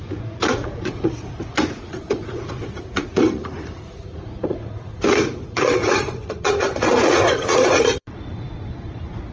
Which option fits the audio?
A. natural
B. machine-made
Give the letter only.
B